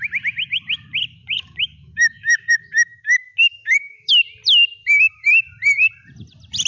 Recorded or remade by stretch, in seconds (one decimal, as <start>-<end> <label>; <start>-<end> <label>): 0.0-1.2 recorded; 1.2-4.1 remade; 4.1-4.8 recorded; 4.8-5.3 remade; 5.3-6.7 recorded